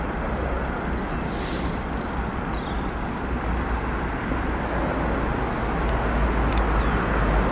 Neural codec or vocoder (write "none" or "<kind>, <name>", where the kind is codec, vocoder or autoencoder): none